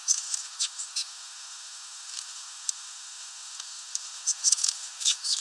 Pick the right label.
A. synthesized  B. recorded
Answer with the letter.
A